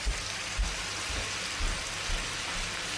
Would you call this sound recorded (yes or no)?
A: yes